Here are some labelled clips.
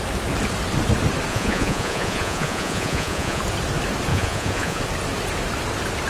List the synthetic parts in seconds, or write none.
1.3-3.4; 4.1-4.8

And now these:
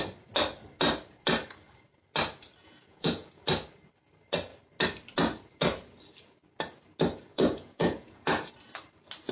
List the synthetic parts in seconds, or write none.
2.6-3.3; 7.3-8.5

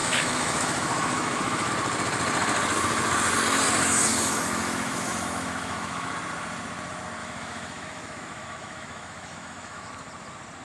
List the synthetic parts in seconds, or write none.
0.0-1.7; 4.1-6.1; 7.2-9.9

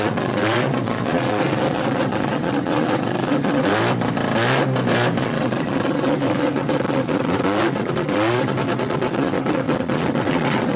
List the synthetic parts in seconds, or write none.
0.0-3.7; 5.2-10.8